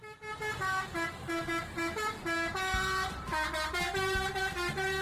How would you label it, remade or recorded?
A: remade